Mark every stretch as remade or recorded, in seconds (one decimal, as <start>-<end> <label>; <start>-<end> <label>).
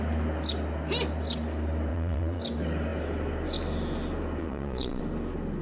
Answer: 0.0-1.9 recorded; 1.9-2.4 remade; 2.4-4.4 recorded; 4.4-5.0 remade; 5.0-5.6 recorded